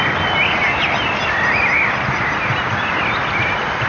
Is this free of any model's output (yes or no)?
yes